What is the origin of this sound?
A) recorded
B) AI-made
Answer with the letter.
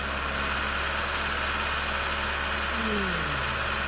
A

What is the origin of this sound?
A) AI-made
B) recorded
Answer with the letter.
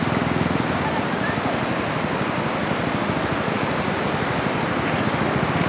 B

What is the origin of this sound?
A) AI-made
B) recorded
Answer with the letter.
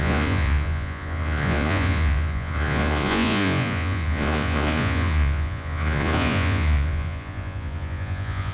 A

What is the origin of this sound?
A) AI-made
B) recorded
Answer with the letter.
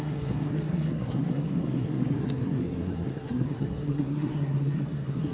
A